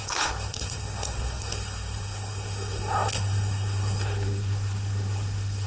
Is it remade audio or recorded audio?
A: remade